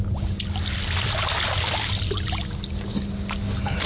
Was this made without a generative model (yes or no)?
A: yes